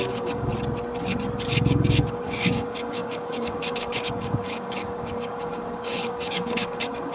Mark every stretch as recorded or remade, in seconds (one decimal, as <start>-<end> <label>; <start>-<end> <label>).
0.0-0.5 remade; 0.5-1.5 recorded; 1.5-7.1 remade